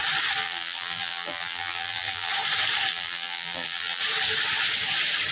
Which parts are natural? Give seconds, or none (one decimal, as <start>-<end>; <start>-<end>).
0.0-0.4; 2.3-2.9; 4.0-5.3